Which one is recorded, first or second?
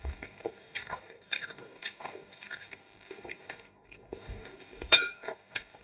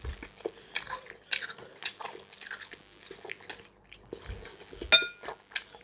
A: second